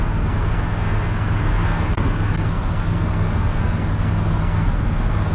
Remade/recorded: remade